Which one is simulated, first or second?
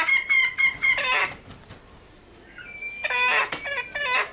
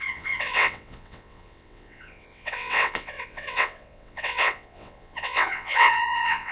second